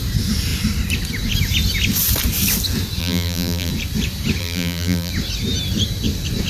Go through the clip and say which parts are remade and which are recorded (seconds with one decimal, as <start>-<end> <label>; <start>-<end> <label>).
0.0-3.0 recorded; 3.0-3.7 remade; 3.7-4.4 recorded; 4.4-5.1 remade; 5.1-6.5 recorded